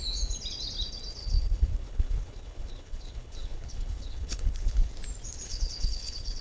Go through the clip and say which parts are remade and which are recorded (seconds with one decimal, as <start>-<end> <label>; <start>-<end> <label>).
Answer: 0.0-1.2 recorded; 1.2-4.9 remade; 4.9-5.5 recorded; 5.5-6.4 remade

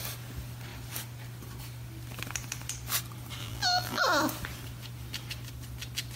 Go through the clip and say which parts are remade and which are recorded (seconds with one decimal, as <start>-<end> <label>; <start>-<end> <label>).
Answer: 0.0-3.4 recorded; 3.4-4.0 remade; 4.0-6.2 recorded

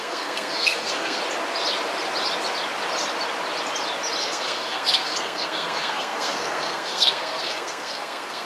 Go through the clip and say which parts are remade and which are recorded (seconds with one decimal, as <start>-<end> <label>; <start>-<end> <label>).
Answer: 0.0-1.2 remade; 1.2-4.2 recorded; 4.2-8.4 remade

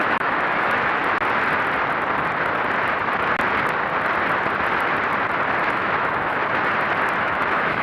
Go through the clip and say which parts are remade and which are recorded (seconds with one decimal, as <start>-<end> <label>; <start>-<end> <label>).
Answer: 0.0-1.0 remade; 1.0-5.7 recorded; 5.7-6.4 remade; 6.4-7.2 recorded; 7.2-7.8 remade

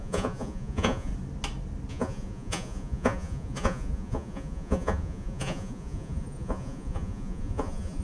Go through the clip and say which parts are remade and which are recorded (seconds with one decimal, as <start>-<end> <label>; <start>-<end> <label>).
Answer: 0.0-1.1 remade; 1.1-1.9 recorded; 1.9-8.0 remade

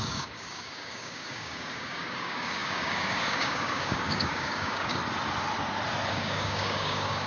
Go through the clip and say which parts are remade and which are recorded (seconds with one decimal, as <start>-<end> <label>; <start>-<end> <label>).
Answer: 0.0-5.0 remade; 5.0-6.1 recorded; 6.1-7.3 remade

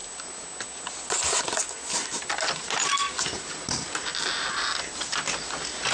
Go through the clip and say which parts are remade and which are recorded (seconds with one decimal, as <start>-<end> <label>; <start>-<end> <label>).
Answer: 0.0-5.9 recorded

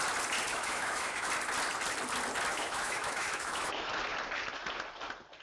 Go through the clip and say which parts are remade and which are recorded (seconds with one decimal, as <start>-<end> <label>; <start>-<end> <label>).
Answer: 0.0-0.5 recorded; 0.5-1.3 remade; 1.3-2.5 recorded; 2.5-3.9 remade; 3.9-5.4 recorded